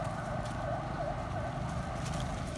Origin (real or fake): real